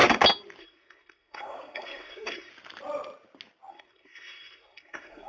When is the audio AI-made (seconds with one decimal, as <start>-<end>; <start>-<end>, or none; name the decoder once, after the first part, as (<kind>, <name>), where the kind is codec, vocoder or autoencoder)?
0.6-2.5 (codec, SNAC); 3.7-5.3